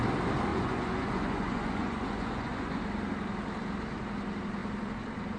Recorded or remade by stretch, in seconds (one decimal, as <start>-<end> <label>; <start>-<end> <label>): 0.0-0.5 recorded; 0.5-2.8 remade; 2.8-5.4 recorded